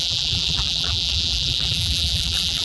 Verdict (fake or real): fake